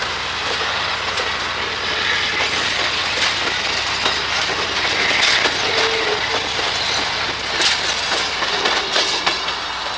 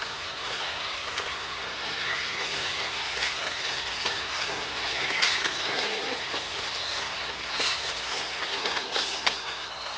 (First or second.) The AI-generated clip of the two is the second